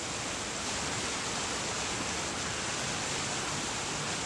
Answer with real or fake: real